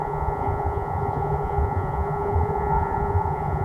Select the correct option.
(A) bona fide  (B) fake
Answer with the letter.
B